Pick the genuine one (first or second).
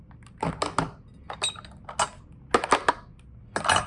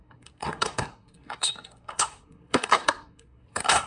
first